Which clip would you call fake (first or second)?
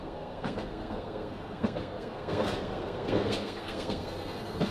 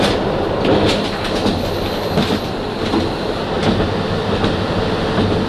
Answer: first